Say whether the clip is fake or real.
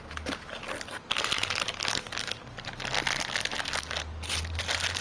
real